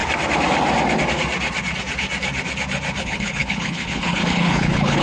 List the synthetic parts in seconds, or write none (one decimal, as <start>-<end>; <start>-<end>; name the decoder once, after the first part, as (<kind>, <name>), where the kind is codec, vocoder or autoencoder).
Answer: 3.0-5.0 (codec, HILCodec)